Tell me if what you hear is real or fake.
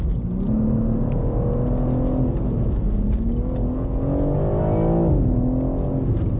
real